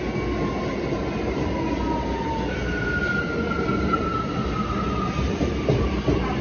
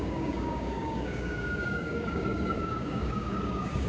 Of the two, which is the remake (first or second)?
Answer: second